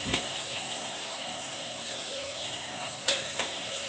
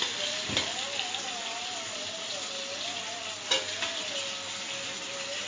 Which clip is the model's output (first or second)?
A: first